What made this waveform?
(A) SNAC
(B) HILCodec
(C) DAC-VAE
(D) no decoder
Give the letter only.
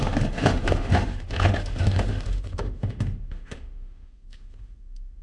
C